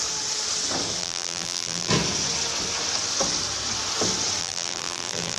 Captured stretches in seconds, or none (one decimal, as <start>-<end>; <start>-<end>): 0.0-1.0; 1.9-4.4